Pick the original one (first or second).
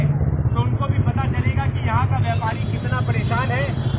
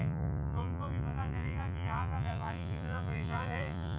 first